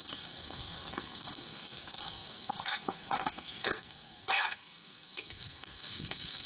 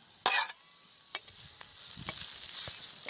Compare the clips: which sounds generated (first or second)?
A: first